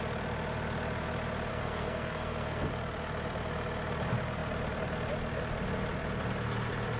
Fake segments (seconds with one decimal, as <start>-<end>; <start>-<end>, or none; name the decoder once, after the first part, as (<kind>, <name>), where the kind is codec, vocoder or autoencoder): 1.5-2.7 (codec, SNAC)